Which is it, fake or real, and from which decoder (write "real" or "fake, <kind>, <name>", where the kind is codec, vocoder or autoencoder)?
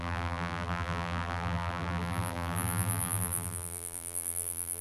fake, vocoder, BigVGAN v2